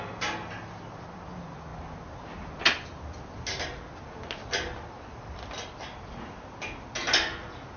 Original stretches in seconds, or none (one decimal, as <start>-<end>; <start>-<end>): 0.0-7.8

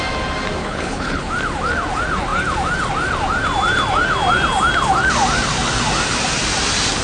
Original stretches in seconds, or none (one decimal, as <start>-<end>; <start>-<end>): 0.0-0.6; 1.3-7.0

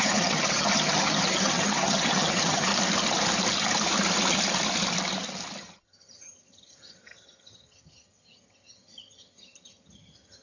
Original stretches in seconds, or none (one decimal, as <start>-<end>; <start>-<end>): 2.7-5.6

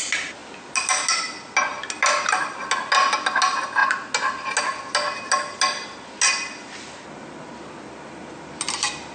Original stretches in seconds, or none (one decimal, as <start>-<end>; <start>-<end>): 0.0-9.1

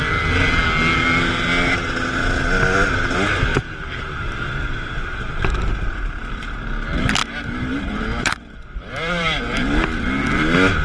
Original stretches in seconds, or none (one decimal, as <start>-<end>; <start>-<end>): 0.0-3.5; 5.3-7.2; 9.4-10.8

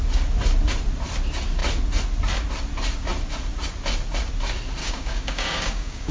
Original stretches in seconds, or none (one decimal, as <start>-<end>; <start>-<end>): 0.0-4.8